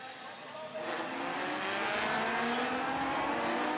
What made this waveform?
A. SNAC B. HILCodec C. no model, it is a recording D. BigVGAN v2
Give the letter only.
C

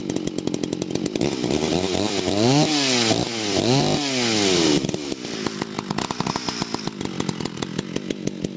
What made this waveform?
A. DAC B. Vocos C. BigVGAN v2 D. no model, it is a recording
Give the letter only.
D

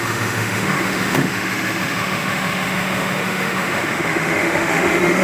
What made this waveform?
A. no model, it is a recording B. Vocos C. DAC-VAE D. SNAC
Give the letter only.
C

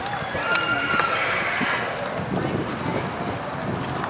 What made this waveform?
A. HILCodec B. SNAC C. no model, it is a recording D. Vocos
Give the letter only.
C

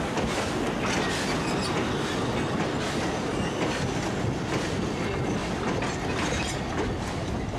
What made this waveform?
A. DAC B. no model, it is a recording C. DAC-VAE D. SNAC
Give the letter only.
B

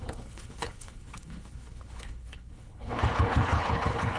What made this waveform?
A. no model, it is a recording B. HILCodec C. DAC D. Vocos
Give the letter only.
B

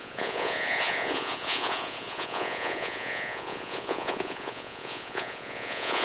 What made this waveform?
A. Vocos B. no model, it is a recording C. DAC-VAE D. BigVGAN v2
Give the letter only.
A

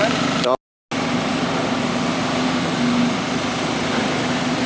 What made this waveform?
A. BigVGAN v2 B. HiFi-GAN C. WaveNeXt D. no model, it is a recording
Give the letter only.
D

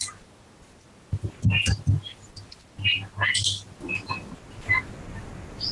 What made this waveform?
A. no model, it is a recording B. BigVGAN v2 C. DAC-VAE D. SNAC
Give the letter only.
A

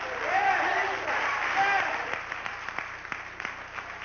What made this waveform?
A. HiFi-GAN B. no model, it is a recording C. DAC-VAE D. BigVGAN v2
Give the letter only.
B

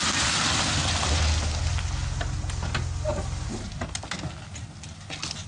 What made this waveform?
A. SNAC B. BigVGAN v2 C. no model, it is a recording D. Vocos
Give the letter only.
C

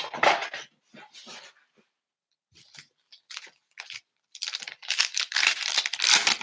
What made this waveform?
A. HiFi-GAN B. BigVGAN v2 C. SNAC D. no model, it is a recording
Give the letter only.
D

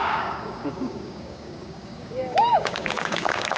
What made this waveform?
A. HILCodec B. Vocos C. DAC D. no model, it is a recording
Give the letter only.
C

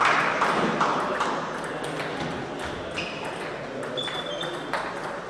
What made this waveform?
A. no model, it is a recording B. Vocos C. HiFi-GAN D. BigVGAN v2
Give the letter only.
A